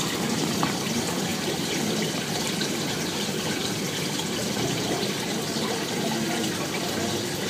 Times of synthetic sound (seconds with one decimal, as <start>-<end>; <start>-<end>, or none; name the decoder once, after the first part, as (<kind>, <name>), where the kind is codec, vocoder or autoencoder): none